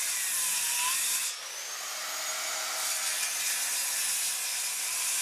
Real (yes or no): yes